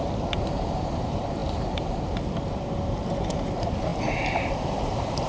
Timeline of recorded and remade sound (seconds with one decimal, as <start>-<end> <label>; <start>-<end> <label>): 0.0-5.3 remade